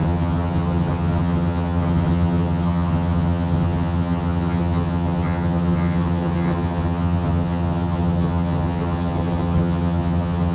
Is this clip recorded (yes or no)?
no